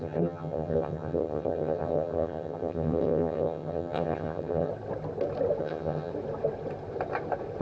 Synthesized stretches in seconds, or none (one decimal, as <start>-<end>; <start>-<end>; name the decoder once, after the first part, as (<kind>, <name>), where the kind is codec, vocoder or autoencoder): 0.0-4.7 (vocoder, HiFi-GAN); 5.6-6.1